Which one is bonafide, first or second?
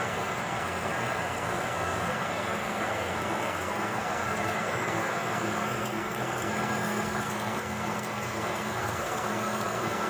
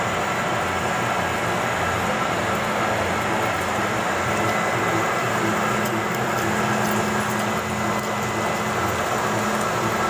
second